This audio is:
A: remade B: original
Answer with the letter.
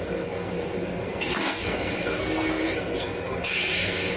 A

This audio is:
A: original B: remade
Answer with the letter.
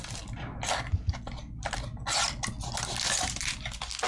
A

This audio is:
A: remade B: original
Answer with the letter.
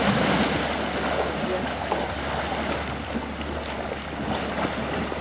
B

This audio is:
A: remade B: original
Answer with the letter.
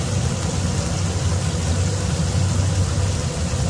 B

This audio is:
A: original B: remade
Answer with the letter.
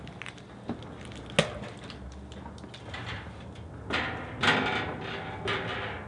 A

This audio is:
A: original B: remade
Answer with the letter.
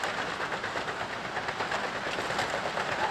A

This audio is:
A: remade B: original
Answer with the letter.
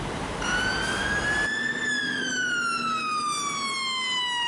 B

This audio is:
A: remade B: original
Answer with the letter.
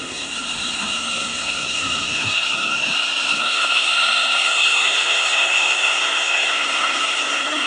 A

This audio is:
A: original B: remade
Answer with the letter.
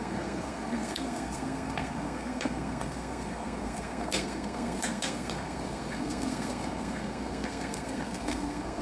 B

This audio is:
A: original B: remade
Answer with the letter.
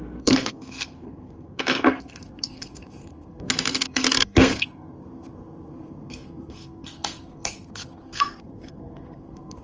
B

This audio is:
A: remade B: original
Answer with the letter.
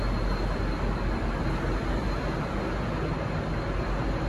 B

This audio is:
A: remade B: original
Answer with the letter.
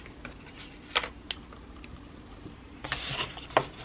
B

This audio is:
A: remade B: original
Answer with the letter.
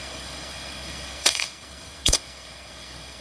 A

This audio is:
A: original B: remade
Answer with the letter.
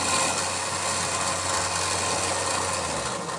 A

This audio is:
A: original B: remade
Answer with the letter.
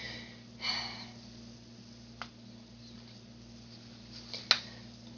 A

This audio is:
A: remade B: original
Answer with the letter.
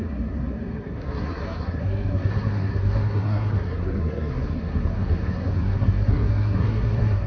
A